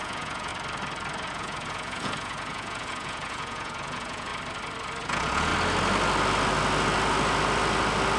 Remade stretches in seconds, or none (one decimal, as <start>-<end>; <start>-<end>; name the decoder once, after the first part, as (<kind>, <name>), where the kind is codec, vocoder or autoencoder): 0.0-0.5 (vocoder, Vocos); 1.3-4.3; 5.0-5.5